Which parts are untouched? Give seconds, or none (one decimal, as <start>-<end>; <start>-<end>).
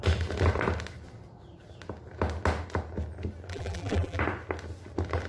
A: 0.0-3.5; 4.2-5.3